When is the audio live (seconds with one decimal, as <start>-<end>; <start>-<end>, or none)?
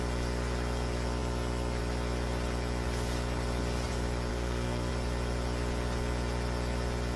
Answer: 0.0-4.3; 4.9-7.2